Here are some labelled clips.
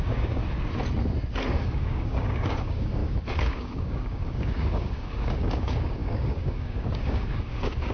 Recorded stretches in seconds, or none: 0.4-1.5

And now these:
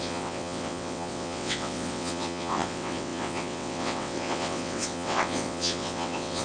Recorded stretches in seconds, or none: none

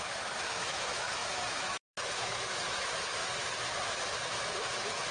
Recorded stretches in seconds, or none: none

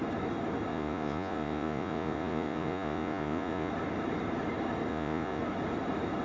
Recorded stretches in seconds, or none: 0.0-0.7; 3.7-4.9; 5.4-6.2

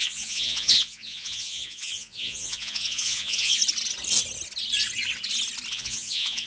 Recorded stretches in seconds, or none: 3.6-5.7

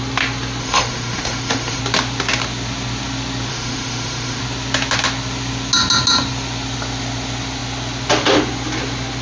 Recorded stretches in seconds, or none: 0.0-0.6; 1.8-3.5; 4.4-9.2

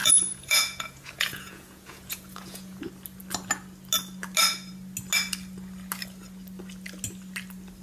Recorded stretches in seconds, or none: 2.8-7.8

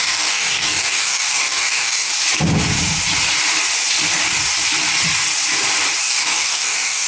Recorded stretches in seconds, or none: 2.1-6.0